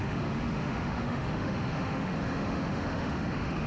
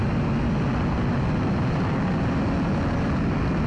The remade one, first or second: first